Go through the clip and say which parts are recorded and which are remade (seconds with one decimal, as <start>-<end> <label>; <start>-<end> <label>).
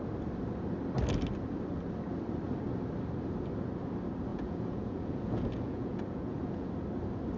0.0-4.3 recorded; 4.3-6.7 remade; 6.7-7.4 recorded